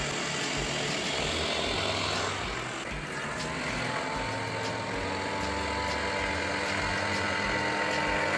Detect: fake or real real